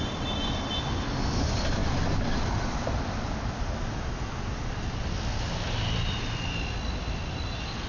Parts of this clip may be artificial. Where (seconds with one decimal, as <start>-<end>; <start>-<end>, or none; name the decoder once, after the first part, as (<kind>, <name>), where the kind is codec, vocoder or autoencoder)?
none